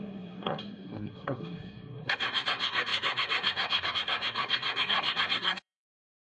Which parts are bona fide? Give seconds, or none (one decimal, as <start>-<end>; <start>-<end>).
none